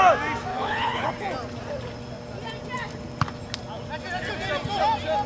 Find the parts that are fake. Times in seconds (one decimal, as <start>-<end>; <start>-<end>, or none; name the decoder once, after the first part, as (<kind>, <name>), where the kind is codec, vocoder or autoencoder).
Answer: 0.5-1.1 (codec, HILCodec)